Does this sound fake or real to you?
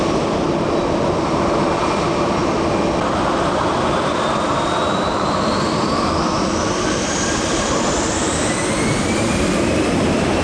real